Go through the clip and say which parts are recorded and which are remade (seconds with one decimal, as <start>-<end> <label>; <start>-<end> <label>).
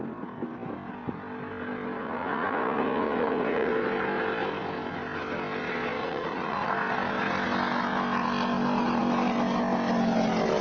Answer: 0.0-2.0 recorded; 2.0-3.7 remade; 3.7-6.0 recorded; 6.0-6.7 remade; 6.7-10.6 recorded